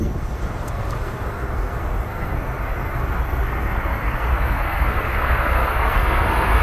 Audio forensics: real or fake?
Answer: fake